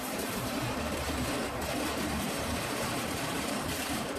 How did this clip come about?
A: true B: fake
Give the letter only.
B